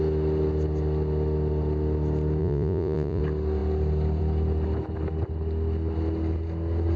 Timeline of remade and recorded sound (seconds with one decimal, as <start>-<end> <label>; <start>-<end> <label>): 0.0-2.4 recorded; 2.4-3.2 remade; 3.2-7.0 recorded